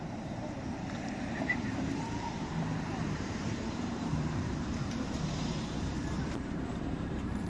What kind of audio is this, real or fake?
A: fake